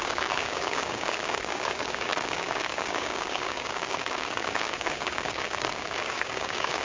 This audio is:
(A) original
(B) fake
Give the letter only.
B